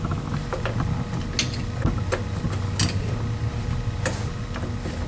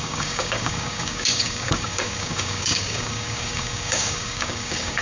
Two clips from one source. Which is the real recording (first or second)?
first